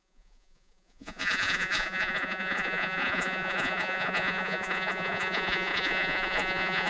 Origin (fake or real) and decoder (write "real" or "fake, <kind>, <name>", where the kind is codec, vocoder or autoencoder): fake, vocoder, Vocos